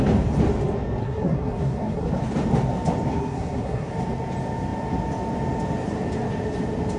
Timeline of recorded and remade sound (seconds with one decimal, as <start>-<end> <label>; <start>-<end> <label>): 0.0-1.0 recorded; 1.0-2.1 remade; 2.1-3.1 recorded; 3.1-3.9 remade; 3.9-7.0 recorded